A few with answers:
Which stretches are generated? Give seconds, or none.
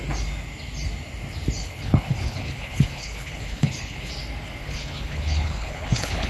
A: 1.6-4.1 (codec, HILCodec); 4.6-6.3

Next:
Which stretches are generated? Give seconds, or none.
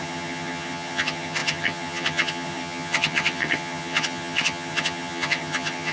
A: 0.0-5.9 (vocoder, HiFi-GAN)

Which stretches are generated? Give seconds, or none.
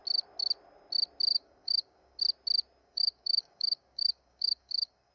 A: 1.3-2.2 (codec, DAC); 2.8-5.1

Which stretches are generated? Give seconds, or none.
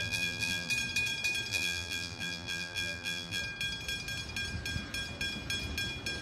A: 0.0-0.7 (vocoder, BigVGAN v2); 1.5-3.4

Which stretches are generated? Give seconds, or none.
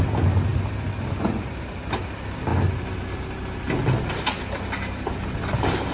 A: none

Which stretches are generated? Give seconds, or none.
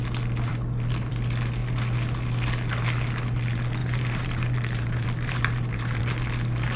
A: 3.8-6.0 (vocoder, BigVGAN v2)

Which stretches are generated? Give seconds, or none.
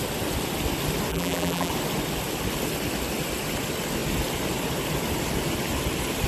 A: 1.1-1.7 (vocoder, BigVGAN v2)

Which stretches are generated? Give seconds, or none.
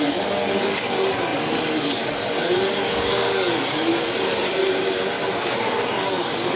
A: 0.0-3.9 (codec, DAC); 5.3-6.6